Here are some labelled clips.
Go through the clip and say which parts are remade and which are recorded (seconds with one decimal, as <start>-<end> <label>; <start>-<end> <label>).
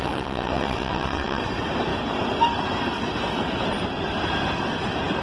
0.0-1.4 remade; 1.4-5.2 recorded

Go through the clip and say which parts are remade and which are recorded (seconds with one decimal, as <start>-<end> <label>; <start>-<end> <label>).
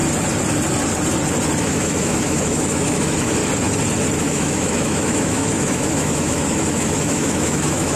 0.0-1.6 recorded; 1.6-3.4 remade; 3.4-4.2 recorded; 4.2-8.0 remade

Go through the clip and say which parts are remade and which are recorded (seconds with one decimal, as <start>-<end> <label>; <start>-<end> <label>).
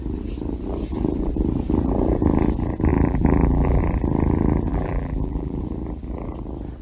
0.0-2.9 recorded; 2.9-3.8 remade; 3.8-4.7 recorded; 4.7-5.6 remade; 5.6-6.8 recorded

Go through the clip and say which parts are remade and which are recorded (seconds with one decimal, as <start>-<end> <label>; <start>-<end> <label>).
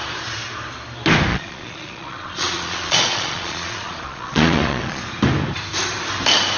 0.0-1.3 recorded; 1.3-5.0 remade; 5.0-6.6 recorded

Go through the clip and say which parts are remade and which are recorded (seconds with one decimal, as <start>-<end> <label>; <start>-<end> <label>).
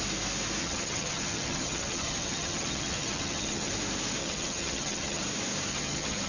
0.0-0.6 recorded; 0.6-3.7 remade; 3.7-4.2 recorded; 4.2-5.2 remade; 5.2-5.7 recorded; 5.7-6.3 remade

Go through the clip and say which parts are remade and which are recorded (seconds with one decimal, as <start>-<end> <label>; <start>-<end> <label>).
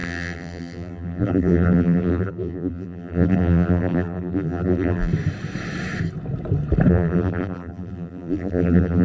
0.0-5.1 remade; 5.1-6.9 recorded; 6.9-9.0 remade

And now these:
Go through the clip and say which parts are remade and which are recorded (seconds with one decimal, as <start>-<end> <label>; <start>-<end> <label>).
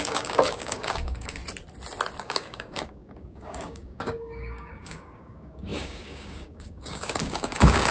0.0-1.4 remade; 1.4-2.2 recorded; 2.2-7.9 remade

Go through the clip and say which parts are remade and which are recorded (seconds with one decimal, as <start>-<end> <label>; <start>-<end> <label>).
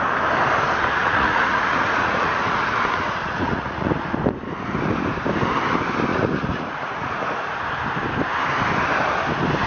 0.0-1.0 recorded; 1.0-3.9 remade; 3.9-6.1 recorded; 6.1-7.6 remade; 7.6-9.7 recorded